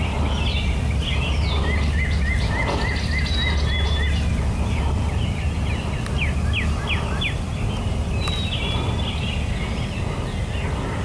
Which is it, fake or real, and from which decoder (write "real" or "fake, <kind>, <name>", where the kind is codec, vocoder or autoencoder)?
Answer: real